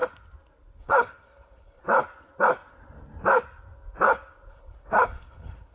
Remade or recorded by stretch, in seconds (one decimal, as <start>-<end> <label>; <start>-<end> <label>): 0.0-0.8 recorded; 0.8-1.8 remade; 1.8-4.5 recorded; 4.5-5.7 remade